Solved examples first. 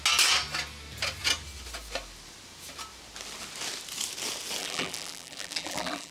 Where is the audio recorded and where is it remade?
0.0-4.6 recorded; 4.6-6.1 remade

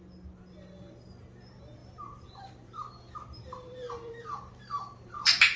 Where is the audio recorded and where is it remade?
0.0-1.8 recorded; 1.8-5.6 remade